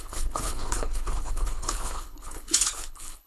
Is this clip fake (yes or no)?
yes